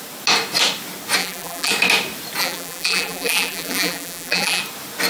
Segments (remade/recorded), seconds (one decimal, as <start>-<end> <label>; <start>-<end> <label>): 0.0-1.2 recorded; 1.2-1.7 remade; 1.7-2.4 recorded; 2.4-4.6 remade; 4.6-5.1 recorded